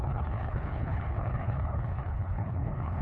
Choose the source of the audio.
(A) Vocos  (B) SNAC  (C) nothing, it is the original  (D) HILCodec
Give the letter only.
D